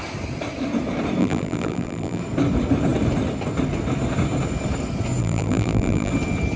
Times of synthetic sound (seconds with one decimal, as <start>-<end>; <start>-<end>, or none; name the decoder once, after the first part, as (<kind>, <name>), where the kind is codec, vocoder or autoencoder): 1.2-2.2 (vocoder, BigVGAN v2); 5.2-6.1

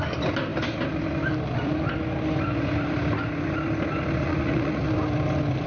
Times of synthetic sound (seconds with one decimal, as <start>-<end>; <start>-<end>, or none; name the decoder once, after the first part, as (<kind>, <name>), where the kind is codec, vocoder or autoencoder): 4.2-4.9 (vocoder, Vocos)

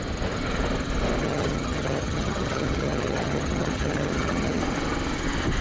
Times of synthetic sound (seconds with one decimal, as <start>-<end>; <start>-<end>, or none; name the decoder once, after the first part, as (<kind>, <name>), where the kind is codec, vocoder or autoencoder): 1.2-4.6 (vocoder, HiFi-GAN)

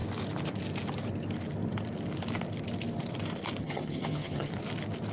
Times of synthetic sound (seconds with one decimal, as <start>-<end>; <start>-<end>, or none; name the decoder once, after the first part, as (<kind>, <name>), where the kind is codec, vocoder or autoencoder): 3.6-4.5 (vocoder, HiFi-GAN)

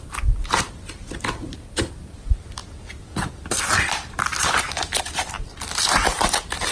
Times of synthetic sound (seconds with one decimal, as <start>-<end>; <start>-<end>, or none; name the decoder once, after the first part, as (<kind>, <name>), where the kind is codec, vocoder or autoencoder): none

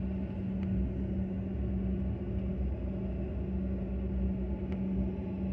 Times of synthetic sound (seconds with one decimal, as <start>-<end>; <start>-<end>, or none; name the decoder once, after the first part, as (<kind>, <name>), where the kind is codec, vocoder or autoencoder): none

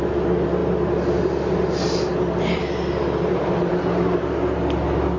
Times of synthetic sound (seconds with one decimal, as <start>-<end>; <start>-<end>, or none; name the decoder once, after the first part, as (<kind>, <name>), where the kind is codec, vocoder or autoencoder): none

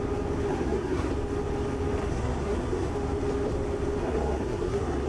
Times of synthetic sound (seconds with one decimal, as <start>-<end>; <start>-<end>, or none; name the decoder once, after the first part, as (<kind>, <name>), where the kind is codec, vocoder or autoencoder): 0.5-1.1 (codec, SNAC); 2.0-2.9; 4.0-5.1